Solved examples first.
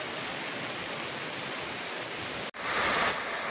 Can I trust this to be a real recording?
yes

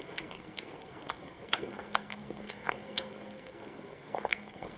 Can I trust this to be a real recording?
no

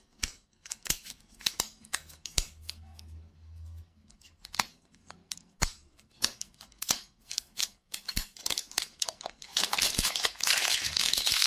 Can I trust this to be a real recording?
no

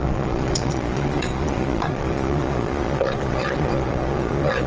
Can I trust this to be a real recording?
no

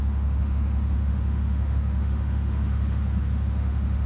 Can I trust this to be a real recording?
no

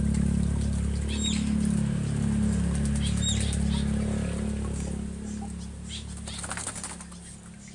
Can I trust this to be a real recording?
yes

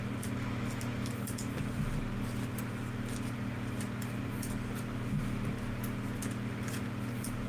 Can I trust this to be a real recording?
yes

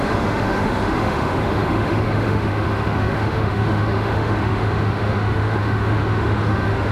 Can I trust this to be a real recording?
no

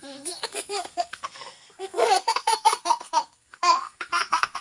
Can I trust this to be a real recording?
no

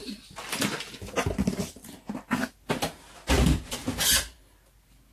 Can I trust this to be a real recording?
yes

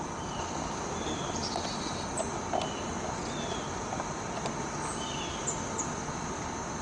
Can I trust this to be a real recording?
yes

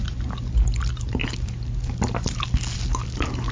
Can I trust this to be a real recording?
yes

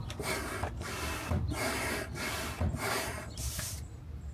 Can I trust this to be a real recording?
no